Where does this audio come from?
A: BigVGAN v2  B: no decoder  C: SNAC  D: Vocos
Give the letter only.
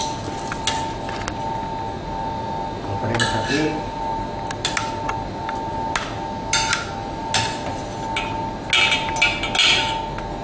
B